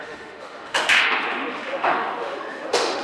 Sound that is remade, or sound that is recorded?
remade